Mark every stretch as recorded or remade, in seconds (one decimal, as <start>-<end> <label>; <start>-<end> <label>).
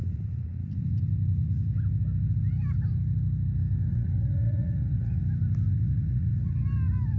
0.0-0.9 remade; 0.9-3.9 recorded; 3.9-5.2 remade; 5.2-5.7 recorded; 5.7-6.6 remade; 6.6-7.2 recorded